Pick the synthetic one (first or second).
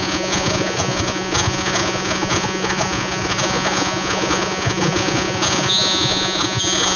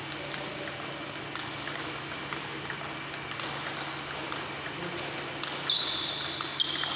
first